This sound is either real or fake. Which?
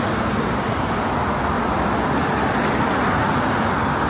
real